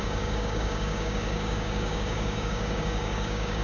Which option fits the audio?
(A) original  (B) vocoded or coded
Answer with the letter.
B